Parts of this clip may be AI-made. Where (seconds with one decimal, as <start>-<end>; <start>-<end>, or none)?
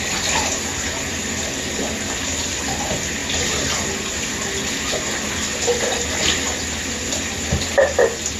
none